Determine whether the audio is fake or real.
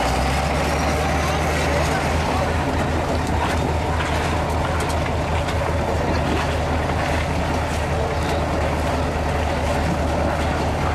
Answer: real